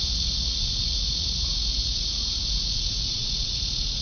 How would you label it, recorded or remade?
remade